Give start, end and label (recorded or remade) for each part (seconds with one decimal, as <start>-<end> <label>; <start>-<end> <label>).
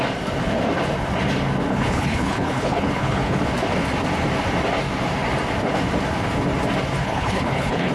0.0-1.7 recorded; 1.7-3.4 remade; 3.4-7.0 recorded; 7.0-7.9 remade